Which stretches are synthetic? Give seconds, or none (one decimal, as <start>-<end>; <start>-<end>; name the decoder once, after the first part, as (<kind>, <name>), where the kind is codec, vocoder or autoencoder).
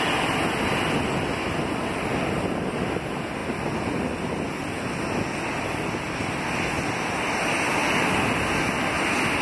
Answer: none